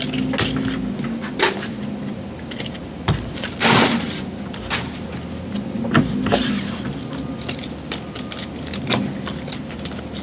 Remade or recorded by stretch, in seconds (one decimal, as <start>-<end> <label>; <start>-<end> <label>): 0.0-10.2 recorded